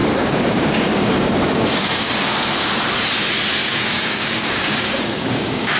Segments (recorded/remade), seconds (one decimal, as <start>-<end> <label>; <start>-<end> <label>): 0.0-2.1 remade; 2.1-3.6 recorded; 3.6-5.8 remade